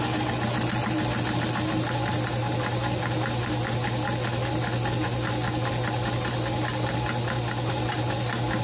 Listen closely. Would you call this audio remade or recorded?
recorded